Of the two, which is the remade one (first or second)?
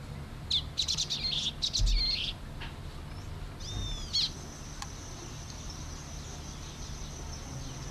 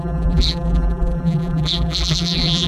second